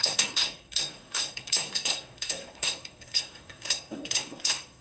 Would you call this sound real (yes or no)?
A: no